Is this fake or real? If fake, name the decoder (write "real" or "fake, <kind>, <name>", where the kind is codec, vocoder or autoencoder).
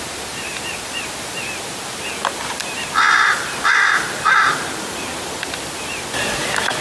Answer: real